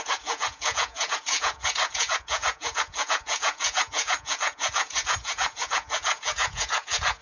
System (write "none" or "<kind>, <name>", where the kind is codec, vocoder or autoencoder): vocoder, Vocos